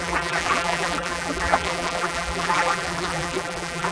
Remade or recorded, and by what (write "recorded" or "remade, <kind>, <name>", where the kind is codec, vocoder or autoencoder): remade, vocoder, BigVGAN v2